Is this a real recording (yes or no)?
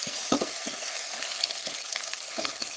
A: no